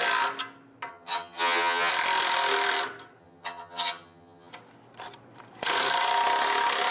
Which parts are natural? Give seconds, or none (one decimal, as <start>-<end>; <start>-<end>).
0.0-0.9; 1.9-3.2; 4.5-6.9